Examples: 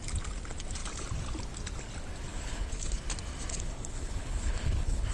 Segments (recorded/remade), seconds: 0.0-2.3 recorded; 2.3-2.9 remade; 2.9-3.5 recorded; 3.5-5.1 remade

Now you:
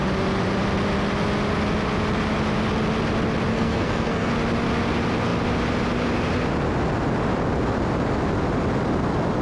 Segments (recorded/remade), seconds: 0.0-3.5 recorded; 3.5-4.3 remade; 4.3-9.4 recorded

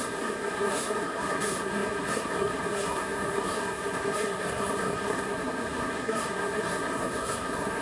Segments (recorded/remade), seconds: 0.0-7.8 remade

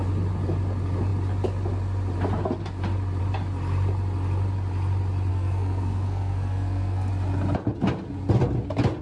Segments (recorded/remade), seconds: 0.0-5.3 recorded; 5.3-7.1 remade; 7.1-9.0 recorded

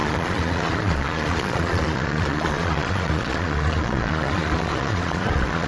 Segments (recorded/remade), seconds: 0.0-5.7 remade

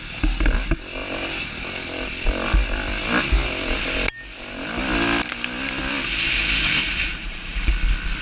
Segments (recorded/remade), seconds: 0.0-6.8 recorded; 6.8-7.6 remade; 7.6-8.2 recorded